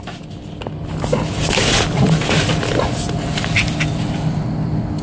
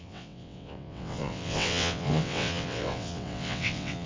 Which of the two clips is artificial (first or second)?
second